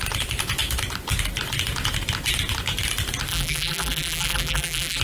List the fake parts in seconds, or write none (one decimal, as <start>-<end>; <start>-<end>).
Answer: 3.3-5.0